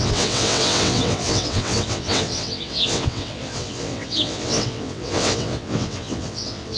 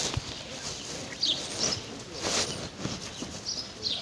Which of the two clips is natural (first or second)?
second